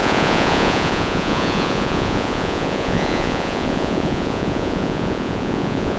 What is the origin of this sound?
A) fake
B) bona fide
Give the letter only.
A